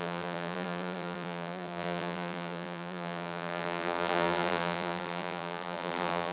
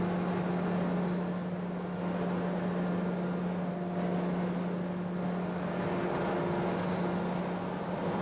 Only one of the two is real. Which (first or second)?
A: second